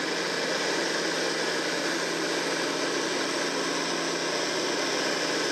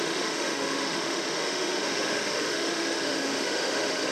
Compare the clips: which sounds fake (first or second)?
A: second